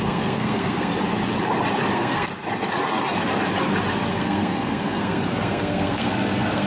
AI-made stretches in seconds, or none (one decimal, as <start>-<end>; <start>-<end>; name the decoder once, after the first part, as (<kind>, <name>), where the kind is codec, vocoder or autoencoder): 0.0-0.9 (codec, SNAC); 1.9-2.3; 4.1-6.7